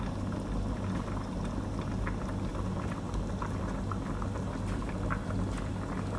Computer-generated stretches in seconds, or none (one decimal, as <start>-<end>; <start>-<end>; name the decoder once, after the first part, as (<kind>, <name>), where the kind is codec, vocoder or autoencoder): none